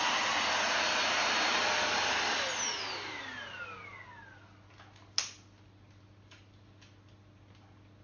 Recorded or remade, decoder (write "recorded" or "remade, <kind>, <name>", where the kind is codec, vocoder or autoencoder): recorded